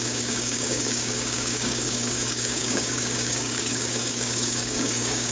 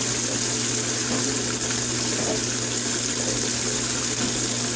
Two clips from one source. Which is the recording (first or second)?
second